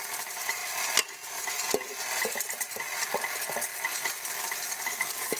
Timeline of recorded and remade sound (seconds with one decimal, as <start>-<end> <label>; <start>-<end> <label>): 0.0-5.4 recorded

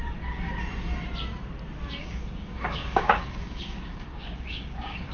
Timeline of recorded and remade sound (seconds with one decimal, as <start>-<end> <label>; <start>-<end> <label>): 0.0-2.0 recorded; 2.0-5.1 remade

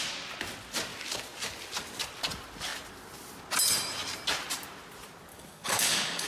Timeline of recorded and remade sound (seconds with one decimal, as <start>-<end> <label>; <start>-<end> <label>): 0.0-5.3 recorded; 5.3-6.3 remade

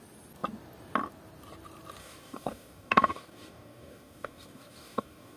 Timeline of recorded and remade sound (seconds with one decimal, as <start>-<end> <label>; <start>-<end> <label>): 0.0-2.0 recorded; 2.0-5.4 remade

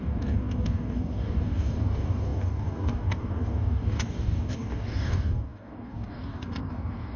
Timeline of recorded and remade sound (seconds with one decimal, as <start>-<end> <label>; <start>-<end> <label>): 0.0-7.2 remade

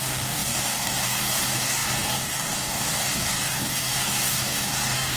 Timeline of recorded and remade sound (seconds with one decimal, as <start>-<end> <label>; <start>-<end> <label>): 0.0-5.2 remade

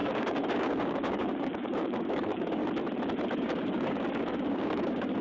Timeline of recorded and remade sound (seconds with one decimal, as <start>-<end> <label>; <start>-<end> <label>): 0.0-2.6 remade; 2.6-3.4 recorded; 3.4-5.2 remade